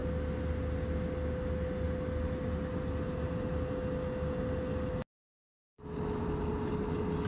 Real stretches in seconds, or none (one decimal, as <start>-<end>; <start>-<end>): 0.0-7.3